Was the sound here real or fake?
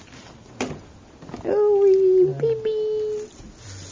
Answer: real